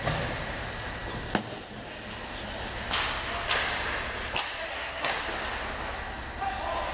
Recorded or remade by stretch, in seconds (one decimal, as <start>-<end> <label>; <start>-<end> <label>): 0.0-4.7 recorded; 4.7-5.2 remade; 5.2-6.9 recorded